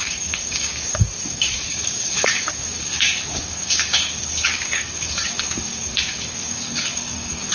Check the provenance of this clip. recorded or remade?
remade